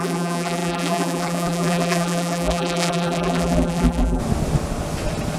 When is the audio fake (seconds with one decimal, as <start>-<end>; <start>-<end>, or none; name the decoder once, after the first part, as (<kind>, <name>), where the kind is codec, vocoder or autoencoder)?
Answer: 0.0-4.2 (vocoder, BigVGAN v2)